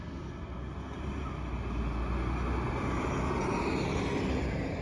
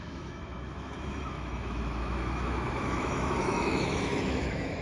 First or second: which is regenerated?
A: second